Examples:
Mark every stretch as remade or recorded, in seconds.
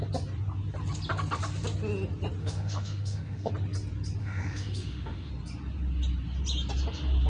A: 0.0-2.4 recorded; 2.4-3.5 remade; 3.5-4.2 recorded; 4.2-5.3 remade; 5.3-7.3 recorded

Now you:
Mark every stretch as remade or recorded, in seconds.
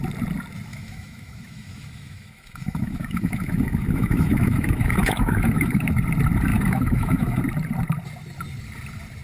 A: 0.0-0.7 recorded; 0.7-5.9 remade; 5.9-6.5 recorded; 6.5-7.4 remade; 7.4-9.2 recorded